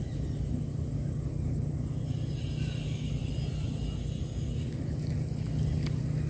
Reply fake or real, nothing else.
real